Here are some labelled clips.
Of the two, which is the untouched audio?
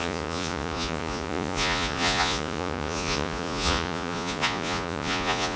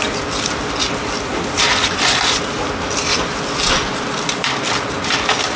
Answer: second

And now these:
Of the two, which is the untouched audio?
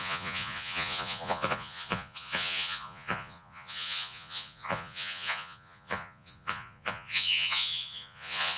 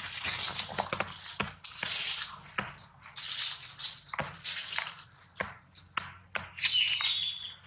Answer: second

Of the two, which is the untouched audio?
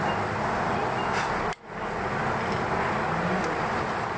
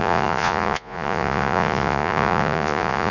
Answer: first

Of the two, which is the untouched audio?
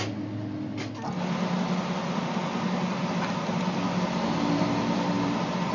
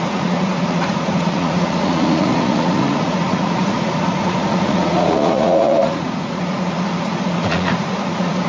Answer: first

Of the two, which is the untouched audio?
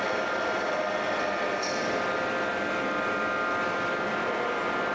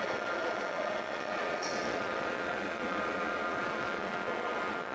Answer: first